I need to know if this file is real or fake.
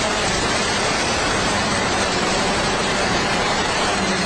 fake